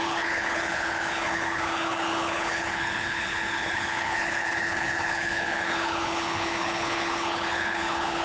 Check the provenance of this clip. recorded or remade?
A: remade